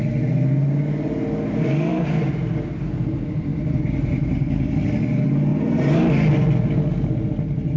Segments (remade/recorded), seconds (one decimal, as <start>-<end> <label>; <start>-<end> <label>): 0.0-1.9 recorded; 1.9-2.6 remade; 2.6-3.5 recorded; 3.5-4.7 remade; 4.7-5.5 recorded; 5.5-6.0 remade; 6.0-7.8 recorded